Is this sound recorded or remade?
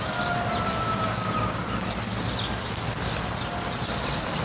recorded